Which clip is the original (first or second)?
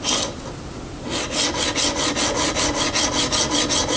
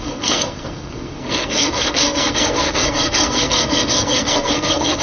first